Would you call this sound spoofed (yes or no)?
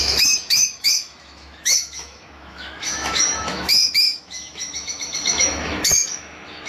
yes